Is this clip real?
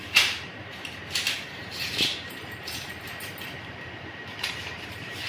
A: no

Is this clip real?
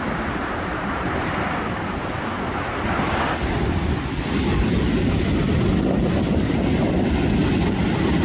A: yes